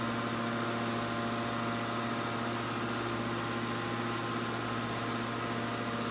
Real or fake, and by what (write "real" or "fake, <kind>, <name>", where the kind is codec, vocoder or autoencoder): real